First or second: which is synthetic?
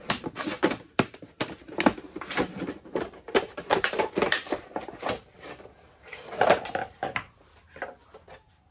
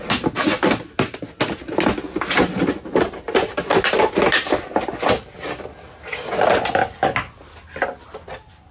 first